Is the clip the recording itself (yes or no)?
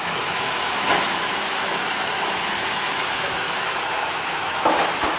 no